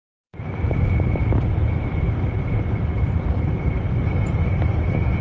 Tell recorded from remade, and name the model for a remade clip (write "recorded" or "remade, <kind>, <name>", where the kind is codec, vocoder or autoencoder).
remade, vocoder, BigVGAN v2